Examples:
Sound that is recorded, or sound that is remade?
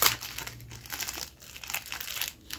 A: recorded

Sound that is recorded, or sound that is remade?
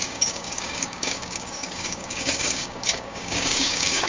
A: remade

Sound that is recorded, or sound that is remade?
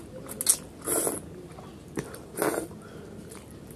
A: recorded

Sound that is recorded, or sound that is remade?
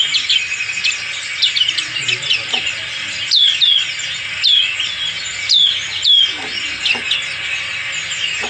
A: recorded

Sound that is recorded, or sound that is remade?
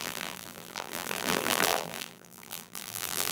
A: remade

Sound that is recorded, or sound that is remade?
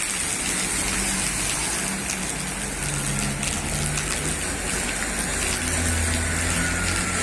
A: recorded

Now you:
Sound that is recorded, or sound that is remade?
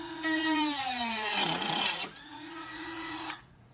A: remade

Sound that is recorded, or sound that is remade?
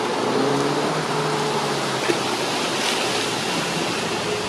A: recorded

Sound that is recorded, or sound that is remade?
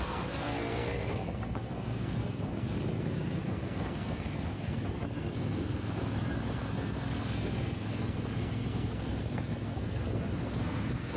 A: remade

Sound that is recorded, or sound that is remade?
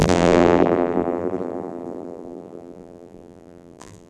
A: remade